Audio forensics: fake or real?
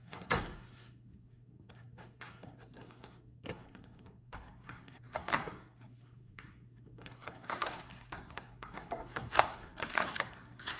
fake